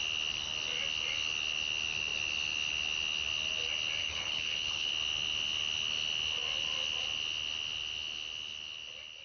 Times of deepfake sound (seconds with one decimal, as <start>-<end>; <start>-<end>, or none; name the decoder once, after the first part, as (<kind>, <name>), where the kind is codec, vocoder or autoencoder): 4.0-4.9 (codec, HILCodec)